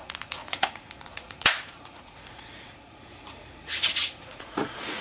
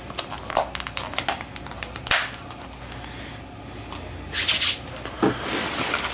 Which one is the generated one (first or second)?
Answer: first